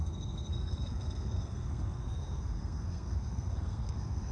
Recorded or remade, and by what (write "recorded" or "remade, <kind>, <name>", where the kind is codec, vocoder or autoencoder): remade, codec, SNAC